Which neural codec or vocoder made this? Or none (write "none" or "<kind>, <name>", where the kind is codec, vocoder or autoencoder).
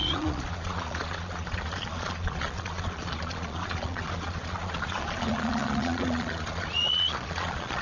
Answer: vocoder, Vocos